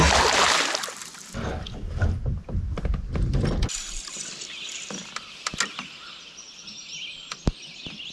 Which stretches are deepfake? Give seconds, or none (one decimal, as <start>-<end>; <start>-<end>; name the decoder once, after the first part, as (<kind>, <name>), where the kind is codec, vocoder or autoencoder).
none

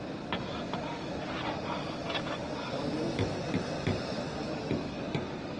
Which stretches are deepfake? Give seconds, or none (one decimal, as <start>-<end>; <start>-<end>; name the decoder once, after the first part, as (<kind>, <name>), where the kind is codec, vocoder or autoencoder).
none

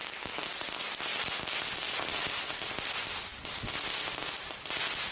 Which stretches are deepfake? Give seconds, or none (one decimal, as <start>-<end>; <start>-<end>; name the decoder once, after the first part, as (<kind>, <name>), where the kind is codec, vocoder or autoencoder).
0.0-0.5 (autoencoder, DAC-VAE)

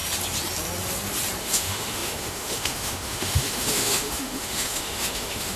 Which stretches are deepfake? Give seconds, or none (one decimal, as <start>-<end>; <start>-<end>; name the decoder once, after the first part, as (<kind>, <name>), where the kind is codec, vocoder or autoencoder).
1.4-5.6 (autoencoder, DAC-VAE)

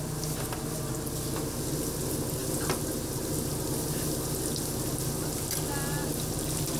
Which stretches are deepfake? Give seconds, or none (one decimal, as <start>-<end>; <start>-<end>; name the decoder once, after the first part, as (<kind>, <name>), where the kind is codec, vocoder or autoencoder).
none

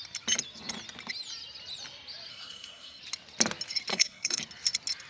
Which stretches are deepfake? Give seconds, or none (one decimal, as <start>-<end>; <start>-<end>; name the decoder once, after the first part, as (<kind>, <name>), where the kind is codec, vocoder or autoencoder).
2.3-3.0 (codec, SNAC); 3.9-4.4

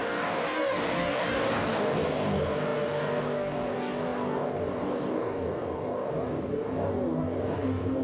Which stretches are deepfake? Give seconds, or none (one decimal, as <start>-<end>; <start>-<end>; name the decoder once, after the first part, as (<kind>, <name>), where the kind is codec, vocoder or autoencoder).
0.0-8.0 (codec, DAC)